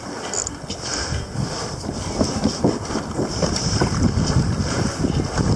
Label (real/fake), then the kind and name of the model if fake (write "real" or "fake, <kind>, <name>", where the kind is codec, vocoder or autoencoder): real